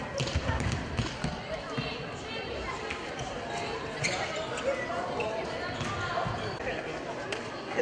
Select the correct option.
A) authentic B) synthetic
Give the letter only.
A